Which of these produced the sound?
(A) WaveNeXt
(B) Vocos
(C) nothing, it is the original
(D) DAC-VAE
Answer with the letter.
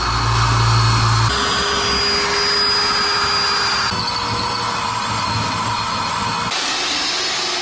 C